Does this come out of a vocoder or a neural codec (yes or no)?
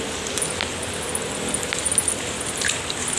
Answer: no